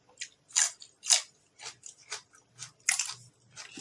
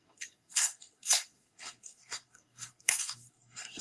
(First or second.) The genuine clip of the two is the first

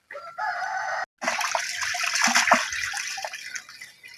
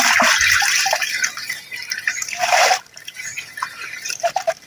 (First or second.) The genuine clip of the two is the first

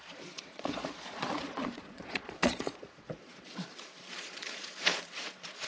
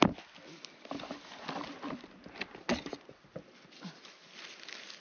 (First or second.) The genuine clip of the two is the second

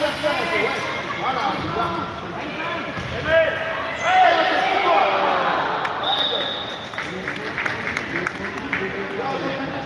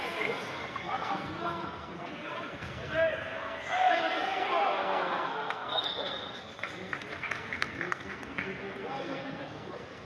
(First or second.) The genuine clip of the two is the first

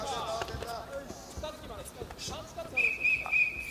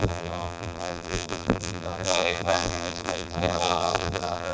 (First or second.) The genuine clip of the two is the first